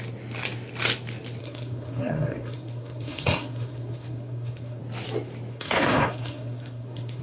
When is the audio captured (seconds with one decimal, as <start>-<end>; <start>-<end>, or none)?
0.0-1.4; 4.8-5.5